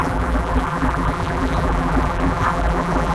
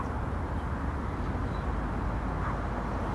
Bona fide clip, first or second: second